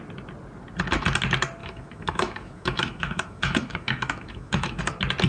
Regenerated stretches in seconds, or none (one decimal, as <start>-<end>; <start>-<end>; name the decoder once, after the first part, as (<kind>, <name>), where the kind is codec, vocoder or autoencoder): 1.6-4.8 (autoencoder, DAC-VAE)